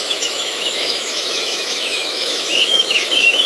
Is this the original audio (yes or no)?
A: no